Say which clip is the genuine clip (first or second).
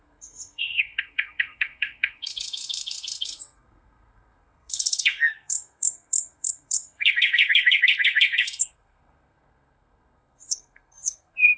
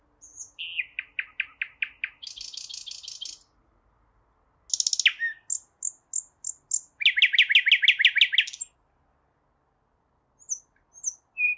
second